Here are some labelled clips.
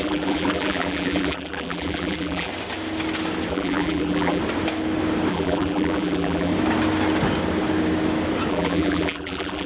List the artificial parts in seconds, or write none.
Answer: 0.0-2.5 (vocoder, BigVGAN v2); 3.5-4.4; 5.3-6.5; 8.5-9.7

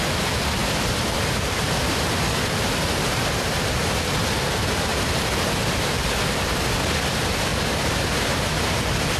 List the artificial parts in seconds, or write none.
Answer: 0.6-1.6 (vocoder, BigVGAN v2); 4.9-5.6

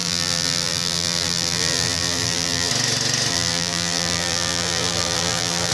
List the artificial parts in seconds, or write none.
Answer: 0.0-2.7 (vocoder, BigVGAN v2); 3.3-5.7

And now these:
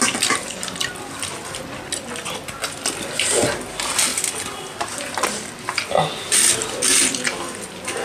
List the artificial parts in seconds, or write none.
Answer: none

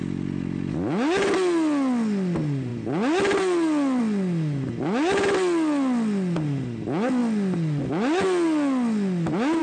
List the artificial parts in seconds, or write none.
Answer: none